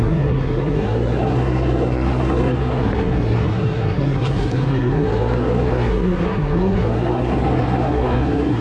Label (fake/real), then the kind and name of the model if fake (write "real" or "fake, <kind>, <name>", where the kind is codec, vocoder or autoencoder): fake, codec, SNAC